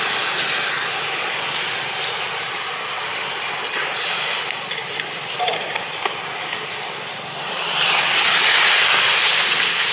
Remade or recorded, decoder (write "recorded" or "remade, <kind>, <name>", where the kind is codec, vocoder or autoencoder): recorded